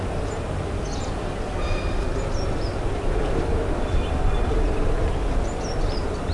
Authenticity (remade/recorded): recorded